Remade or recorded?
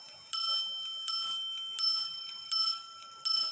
recorded